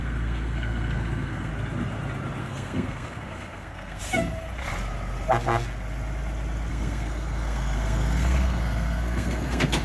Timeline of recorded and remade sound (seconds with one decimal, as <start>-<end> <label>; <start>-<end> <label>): 0.0-1.5 remade; 1.5-2.4 recorded; 2.4-4.0 remade; 4.0-6.7 recorded; 6.7-9.8 remade